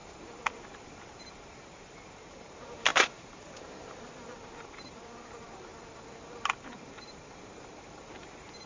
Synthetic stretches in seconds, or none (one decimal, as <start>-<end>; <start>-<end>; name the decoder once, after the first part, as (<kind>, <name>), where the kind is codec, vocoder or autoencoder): 0.5-5.7 (vocoder, BigVGAN v2); 6.4-8.7